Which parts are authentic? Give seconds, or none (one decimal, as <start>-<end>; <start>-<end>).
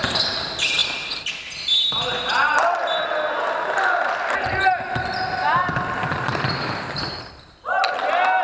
0.0-6.1; 7.7-8.4